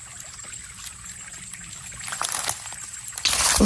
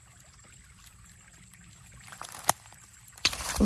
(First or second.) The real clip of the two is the first